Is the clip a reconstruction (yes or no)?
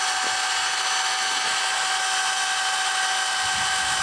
no